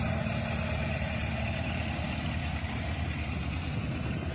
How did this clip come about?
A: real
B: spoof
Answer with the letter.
A